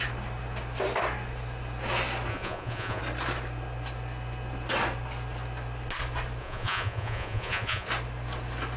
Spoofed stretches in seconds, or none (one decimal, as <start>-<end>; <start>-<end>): 2.3-3.0; 6.4-7.9

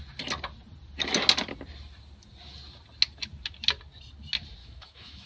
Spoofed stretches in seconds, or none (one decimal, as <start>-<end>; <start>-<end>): 4.6-5.3